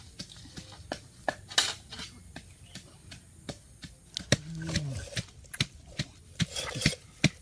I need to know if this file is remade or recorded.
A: recorded